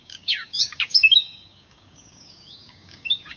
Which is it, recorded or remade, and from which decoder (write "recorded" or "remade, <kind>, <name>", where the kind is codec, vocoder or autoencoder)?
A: remade, codec, DAC